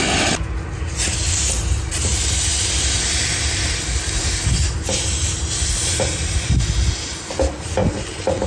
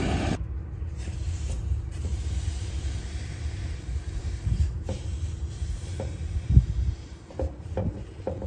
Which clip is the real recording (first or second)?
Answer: first